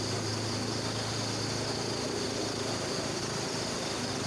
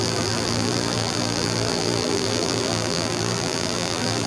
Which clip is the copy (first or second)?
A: second